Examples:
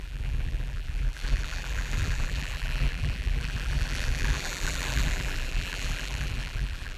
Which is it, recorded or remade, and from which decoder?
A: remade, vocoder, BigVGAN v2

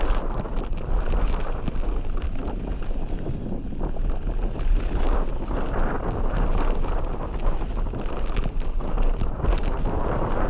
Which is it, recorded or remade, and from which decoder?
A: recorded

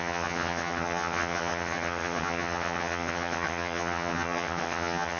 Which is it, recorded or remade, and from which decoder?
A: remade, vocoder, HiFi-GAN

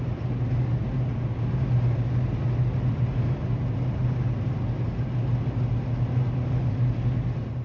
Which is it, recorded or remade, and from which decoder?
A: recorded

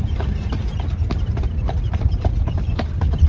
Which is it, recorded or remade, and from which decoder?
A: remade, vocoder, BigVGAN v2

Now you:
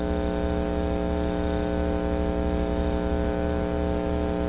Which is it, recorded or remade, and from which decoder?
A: recorded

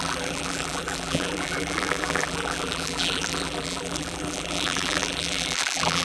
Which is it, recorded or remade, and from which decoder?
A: remade, vocoder, BigVGAN v2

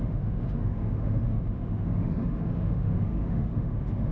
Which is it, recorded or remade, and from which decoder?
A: remade, autoencoder, DAC-VAE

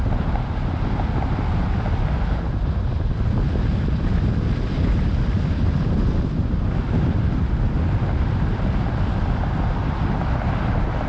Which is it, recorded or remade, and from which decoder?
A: recorded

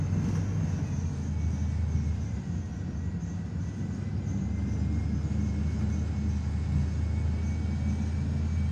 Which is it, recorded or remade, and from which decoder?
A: recorded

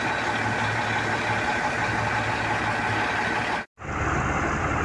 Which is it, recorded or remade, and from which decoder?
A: recorded